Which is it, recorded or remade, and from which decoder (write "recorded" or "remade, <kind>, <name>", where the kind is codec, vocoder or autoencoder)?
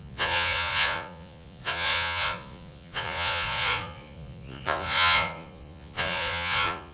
remade, vocoder, Vocos